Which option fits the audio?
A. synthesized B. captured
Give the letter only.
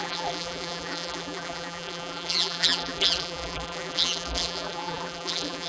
A